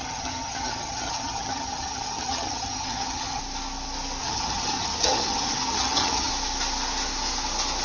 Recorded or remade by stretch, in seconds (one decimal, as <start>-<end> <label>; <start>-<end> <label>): 0.0-3.4 remade; 3.4-4.2 recorded; 4.2-6.3 remade; 6.3-7.8 recorded